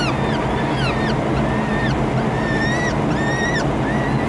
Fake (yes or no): no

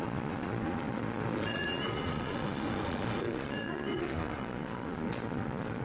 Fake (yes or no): yes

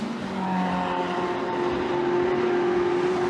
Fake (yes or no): no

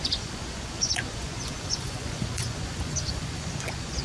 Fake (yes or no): yes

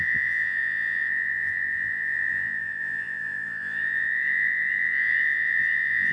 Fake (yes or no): yes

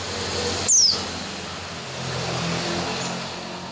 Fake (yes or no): no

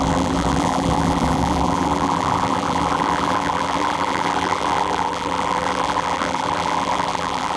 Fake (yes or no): yes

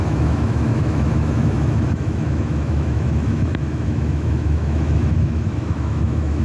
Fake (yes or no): yes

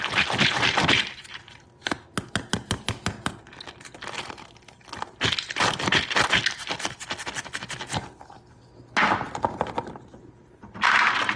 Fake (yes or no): no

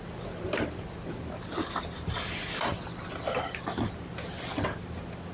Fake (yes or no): no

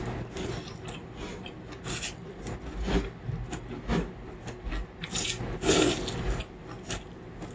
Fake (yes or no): no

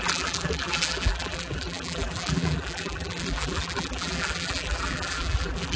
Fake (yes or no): yes